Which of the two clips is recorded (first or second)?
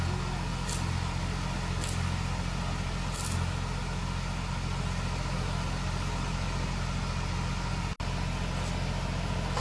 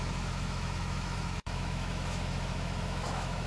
first